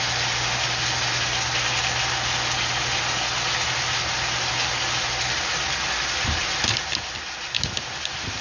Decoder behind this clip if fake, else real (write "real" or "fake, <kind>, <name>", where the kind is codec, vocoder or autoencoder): real